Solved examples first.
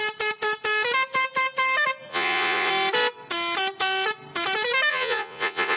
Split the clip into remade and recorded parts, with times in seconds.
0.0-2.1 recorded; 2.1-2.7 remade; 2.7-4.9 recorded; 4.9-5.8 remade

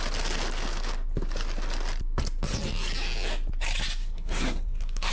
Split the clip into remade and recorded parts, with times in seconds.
0.0-4.0 recorded; 4.0-5.1 remade

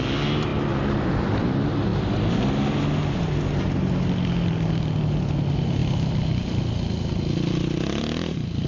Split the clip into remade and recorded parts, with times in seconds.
0.0-8.7 recorded

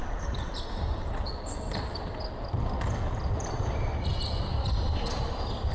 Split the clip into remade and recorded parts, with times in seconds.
0.0-5.7 recorded

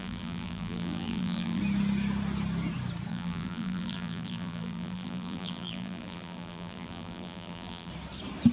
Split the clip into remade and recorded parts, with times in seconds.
0.0-1.6 remade; 1.6-3.1 recorded; 3.1-7.9 remade; 7.9-8.5 recorded

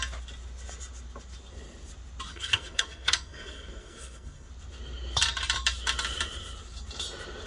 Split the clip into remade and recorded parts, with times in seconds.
0.0-2.3 recorded; 2.3-4.5 remade; 4.5-7.5 recorded